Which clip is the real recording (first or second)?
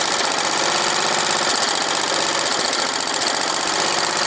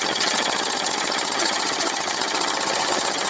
first